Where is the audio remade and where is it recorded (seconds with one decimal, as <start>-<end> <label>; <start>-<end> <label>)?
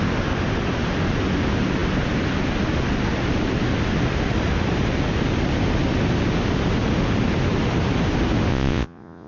0.0-8.5 recorded; 8.5-9.3 remade